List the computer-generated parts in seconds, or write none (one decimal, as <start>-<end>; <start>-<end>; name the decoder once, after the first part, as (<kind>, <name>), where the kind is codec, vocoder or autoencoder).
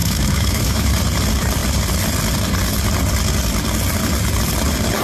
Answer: 0.0-0.9 (autoencoder, DAC-VAE)